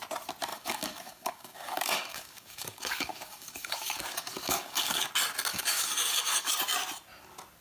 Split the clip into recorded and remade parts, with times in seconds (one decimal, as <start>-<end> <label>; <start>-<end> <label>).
0.0-0.5 recorded; 0.5-5.1 remade; 5.1-5.5 recorded; 5.5-6.5 remade; 6.5-7.6 recorded